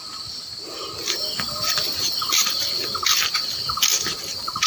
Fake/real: real